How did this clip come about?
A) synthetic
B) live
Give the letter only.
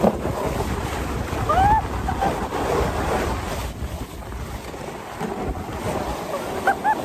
B